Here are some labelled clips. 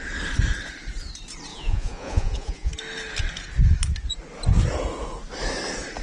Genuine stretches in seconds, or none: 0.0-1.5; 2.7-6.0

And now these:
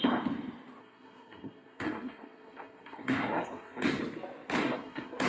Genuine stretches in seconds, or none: 0.0-0.8; 4.0-4.6